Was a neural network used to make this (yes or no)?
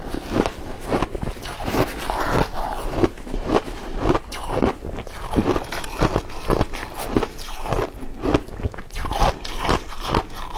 no